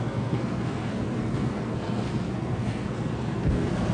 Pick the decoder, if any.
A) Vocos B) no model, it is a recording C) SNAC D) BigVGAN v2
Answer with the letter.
C